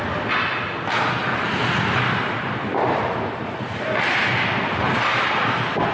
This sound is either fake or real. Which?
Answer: real